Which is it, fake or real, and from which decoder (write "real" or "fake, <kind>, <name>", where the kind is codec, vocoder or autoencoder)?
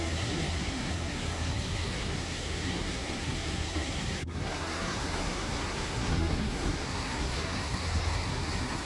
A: fake, codec, SNAC